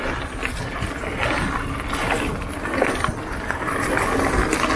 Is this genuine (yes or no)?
yes